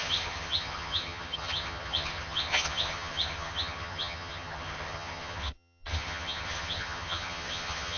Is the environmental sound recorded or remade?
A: remade